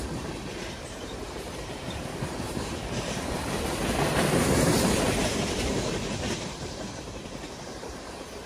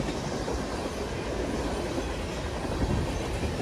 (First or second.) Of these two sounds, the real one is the second